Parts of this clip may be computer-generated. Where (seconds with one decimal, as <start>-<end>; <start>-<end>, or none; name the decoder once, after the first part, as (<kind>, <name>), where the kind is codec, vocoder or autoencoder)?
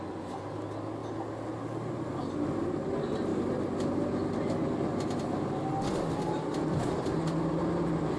none